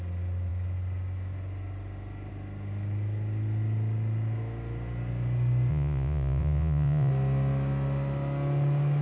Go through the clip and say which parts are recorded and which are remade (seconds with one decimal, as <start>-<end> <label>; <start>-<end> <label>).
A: 0.0-5.7 recorded; 5.7-7.1 remade; 7.1-9.0 recorded